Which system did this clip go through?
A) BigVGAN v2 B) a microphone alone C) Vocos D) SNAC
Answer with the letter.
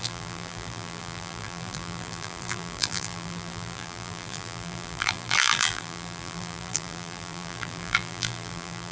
A